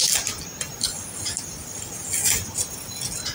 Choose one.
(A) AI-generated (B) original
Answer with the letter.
B